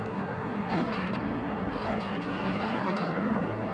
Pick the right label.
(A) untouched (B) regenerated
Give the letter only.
B